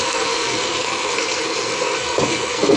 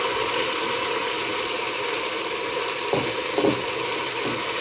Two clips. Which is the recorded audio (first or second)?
second